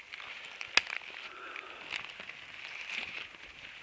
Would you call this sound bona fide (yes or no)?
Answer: yes